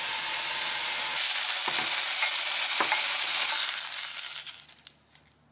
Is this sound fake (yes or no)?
no